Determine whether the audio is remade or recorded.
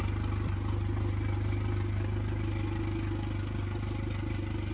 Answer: recorded